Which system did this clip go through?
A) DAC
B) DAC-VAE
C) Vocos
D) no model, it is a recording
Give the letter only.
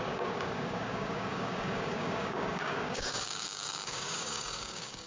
A